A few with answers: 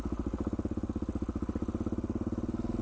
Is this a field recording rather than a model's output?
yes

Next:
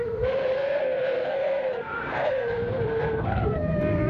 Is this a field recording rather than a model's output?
no